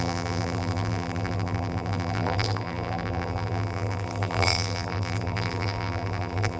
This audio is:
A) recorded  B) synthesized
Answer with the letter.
B